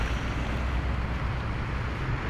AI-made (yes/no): no